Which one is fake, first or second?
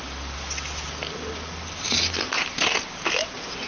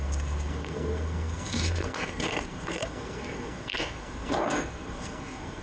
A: second